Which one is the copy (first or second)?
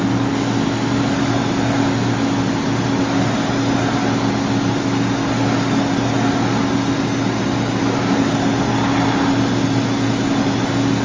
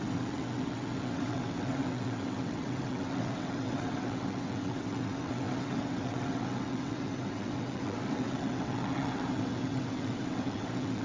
second